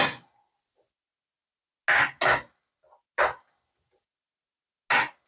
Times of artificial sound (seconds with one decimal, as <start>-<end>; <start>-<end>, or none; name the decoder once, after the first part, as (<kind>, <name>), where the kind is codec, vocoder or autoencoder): none

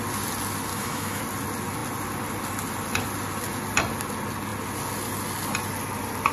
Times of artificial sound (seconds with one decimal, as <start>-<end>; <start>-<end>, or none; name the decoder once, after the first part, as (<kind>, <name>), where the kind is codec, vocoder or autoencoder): 0.7-1.2 (autoencoder, DAC-VAE)